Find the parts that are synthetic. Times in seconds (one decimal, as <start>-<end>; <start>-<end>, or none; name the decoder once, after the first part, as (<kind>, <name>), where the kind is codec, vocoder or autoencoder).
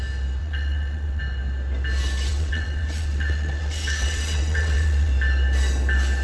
0.4-1.2 (vocoder, WaveNeXt); 2.3-5.1